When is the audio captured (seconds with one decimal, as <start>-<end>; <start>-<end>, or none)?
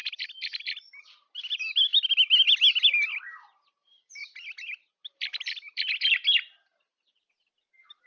0.0-4.2; 7.5-8.1